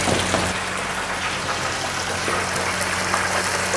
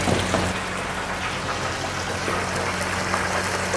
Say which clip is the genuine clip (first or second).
second